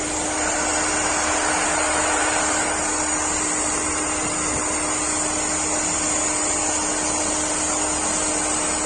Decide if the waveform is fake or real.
real